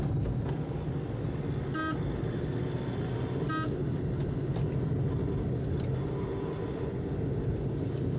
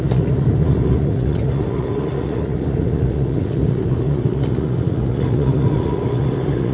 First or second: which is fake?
second